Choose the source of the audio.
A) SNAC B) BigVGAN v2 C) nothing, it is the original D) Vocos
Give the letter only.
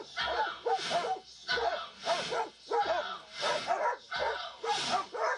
C